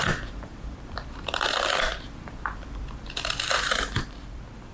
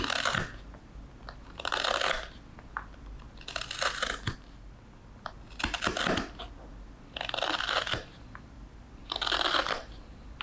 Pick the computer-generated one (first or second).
first